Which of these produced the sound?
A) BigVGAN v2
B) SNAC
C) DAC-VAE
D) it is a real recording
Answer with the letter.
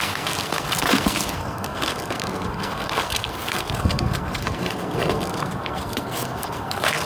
B